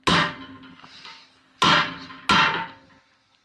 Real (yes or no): yes